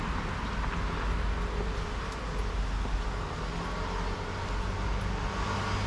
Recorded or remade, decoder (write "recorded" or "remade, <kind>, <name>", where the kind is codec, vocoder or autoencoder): recorded